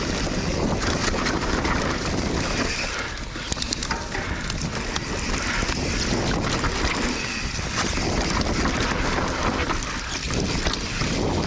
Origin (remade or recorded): remade